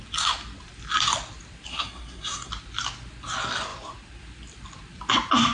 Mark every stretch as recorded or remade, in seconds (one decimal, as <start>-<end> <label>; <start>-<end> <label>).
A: 0.0-1.7 recorded; 1.7-2.5 remade; 2.5-5.5 recorded